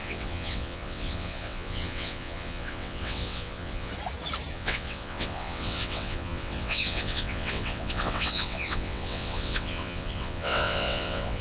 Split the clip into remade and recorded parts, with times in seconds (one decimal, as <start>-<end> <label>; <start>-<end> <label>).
0.0-3.9 remade; 3.9-4.5 recorded; 4.5-11.4 remade